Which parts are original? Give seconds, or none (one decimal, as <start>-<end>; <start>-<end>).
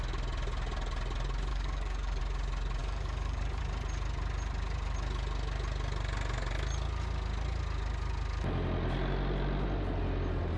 0.0-1.5; 2.2-2.8; 3.6-10.6